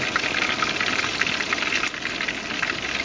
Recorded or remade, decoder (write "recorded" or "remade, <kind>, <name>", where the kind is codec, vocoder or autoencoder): recorded